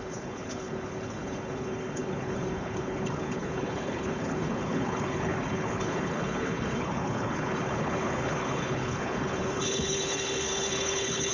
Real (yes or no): no